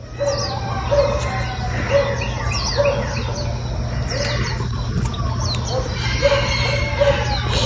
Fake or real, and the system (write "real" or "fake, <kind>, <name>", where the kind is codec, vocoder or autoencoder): real